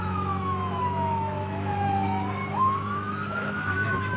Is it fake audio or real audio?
fake